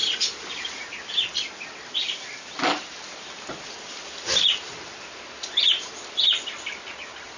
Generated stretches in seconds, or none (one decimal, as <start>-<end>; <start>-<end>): none